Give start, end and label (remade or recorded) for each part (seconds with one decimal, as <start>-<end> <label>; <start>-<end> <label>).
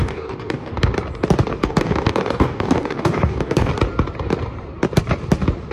0.0-0.9 remade; 0.9-1.6 recorded; 1.6-3.7 remade; 3.7-5.7 recorded